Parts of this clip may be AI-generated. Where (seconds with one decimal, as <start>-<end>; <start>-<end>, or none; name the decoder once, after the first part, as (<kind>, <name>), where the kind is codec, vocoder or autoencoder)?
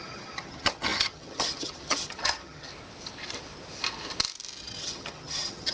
0.0-2.7 (vocoder, HiFi-GAN); 4.6-5.7